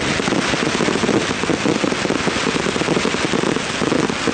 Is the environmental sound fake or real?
real